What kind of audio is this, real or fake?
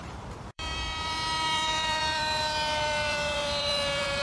fake